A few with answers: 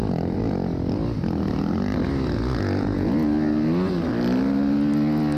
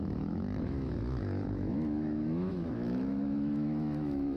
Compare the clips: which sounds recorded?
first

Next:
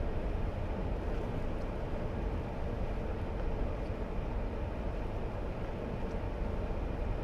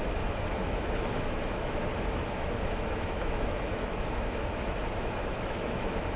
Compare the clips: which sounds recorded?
first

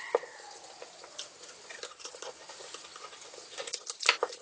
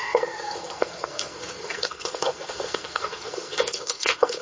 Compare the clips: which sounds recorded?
first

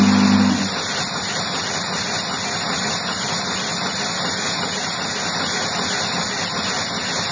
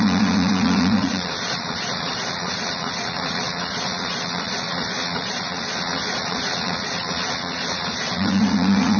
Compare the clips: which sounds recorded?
first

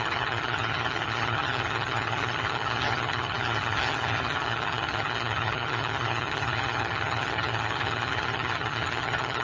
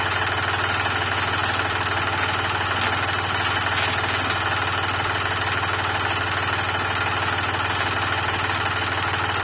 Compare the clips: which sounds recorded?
second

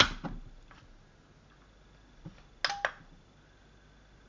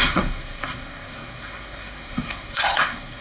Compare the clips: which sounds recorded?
first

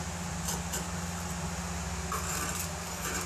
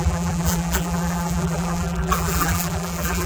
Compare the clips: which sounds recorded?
first